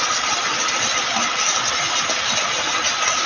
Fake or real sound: real